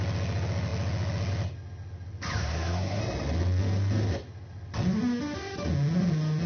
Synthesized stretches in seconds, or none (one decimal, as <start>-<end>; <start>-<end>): 2.4-3.0